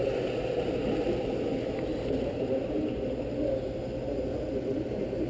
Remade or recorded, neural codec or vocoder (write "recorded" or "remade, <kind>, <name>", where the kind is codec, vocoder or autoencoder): recorded